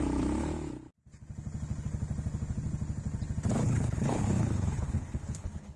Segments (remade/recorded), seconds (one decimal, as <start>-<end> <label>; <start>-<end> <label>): 0.0-3.5 recorded; 3.5-5.8 remade